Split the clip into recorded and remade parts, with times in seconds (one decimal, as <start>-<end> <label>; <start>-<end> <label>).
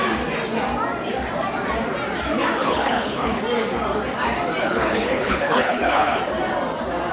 0.0-2.6 recorded; 2.6-3.4 remade; 3.4-4.6 recorded; 4.6-6.2 remade; 6.2-7.1 recorded